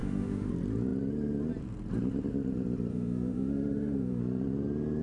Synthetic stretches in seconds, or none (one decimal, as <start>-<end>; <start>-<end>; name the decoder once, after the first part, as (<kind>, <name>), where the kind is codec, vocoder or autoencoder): 0.0-0.5 (autoencoder, DAC-VAE); 2.9-4.2